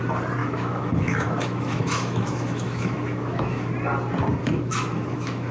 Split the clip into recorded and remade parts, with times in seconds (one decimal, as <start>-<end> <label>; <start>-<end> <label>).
0.0-0.4 recorded; 0.4-3.7 remade; 3.7-4.4 recorded; 4.4-5.5 remade